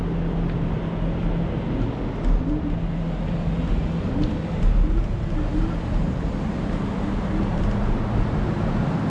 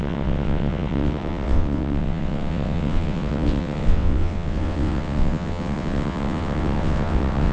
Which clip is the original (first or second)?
first